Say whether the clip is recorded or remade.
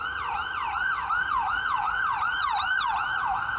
remade